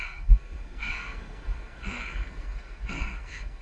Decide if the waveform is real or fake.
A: fake